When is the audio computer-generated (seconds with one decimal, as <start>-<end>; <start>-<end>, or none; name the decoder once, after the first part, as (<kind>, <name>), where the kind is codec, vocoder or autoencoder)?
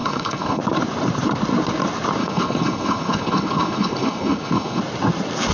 0.0-0.6 (codec, HILCodec); 2.2-4.8